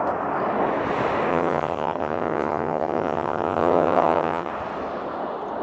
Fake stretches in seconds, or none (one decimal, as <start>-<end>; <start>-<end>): 1.3-4.5